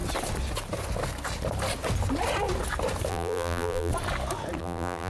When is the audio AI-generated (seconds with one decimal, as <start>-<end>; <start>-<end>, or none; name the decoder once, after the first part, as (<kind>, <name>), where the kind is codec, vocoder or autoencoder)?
3.1-3.9 (vocoder, BigVGAN v2); 4.6-5.1